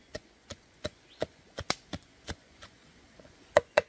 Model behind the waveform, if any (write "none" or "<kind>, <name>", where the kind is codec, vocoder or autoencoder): vocoder, Vocos